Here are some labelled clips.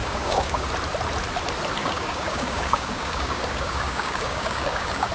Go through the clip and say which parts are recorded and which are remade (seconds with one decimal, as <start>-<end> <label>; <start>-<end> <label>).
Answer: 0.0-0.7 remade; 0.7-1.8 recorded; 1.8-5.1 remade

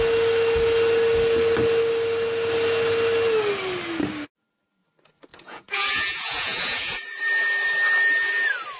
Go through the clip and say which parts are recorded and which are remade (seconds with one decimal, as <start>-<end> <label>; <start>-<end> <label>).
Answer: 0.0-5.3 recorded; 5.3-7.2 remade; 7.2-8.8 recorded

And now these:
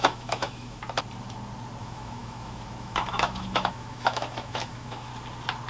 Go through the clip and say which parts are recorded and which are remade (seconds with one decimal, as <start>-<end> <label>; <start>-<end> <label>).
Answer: 0.0-0.8 remade; 0.8-1.8 recorded; 1.8-5.1 remade; 5.1-5.7 recorded

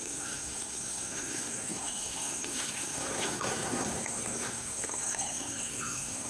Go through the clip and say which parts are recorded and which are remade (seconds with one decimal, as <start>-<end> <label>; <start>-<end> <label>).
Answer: 0.0-6.3 remade